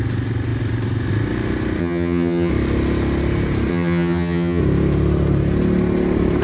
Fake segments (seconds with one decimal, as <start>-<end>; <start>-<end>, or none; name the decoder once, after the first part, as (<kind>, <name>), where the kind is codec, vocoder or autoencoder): 1.8-2.5 (vocoder, HiFi-GAN); 3.7-4.6